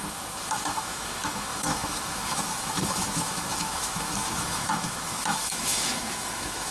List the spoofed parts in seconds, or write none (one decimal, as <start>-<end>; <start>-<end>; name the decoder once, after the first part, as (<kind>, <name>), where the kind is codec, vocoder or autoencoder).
0.0-6.7 (autoencoder, DAC-VAE)